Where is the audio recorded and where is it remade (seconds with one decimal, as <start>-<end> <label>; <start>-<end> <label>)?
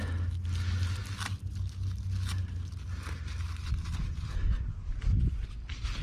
0.0-6.0 recorded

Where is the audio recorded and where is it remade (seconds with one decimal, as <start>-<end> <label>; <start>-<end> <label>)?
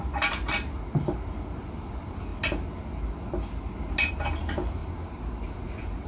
0.0-2.3 remade; 2.3-4.1 recorded; 4.1-6.1 remade